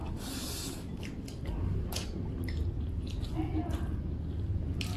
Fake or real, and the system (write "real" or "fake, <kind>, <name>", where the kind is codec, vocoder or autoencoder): real